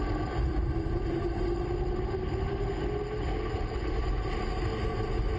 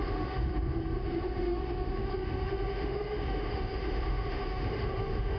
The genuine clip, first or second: first